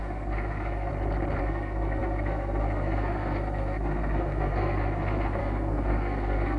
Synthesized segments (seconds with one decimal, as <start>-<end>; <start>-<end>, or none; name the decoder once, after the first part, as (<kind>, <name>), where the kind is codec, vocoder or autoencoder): 0.0-0.9 (codec, SNAC); 1.4-6.6